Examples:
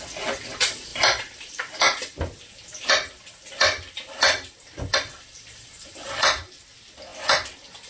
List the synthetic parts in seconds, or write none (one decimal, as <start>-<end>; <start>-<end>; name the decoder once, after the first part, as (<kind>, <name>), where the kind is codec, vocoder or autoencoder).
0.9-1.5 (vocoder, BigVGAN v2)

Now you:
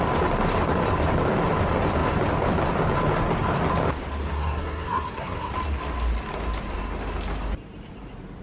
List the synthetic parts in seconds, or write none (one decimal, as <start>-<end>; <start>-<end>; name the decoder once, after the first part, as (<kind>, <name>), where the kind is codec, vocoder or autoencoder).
4.3-5.5 (codec, SNAC)

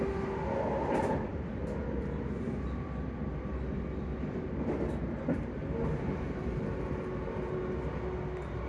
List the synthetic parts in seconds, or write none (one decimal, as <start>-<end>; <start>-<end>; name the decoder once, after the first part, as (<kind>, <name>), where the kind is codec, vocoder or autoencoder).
1.3-1.8 (vocoder, BigVGAN v2)

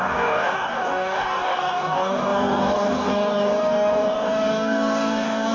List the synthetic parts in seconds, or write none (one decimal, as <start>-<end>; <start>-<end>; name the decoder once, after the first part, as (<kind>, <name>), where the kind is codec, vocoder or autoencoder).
0.0-5.5 (codec, DAC)